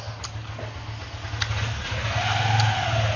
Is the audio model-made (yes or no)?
no